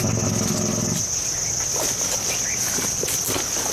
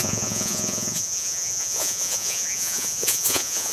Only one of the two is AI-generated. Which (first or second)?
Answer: second